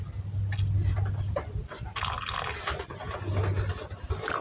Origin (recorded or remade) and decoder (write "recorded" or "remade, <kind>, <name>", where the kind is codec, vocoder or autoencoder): recorded